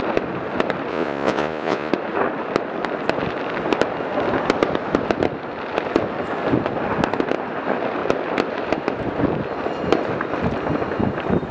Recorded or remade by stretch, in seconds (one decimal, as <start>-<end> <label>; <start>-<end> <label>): 0.0-0.9 recorded; 0.9-1.9 remade; 1.9-11.5 recorded

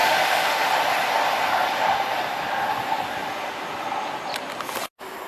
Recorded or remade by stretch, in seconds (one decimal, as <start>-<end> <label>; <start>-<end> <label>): 0.0-0.7 remade; 0.7-5.3 recorded

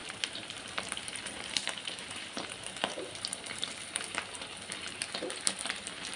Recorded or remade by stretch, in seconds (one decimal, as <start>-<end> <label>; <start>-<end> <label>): 0.0-3.7 remade; 3.7-6.2 recorded

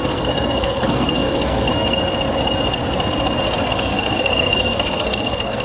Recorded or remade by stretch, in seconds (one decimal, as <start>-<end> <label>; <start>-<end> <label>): 0.0-2.0 remade; 2.0-3.7 recorded; 3.7-5.6 remade

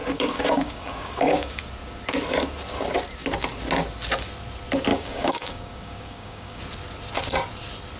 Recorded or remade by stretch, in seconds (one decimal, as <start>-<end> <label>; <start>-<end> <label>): 0.0-1.6 remade; 1.6-4.9 recorded; 4.9-6.6 remade; 6.6-8.0 recorded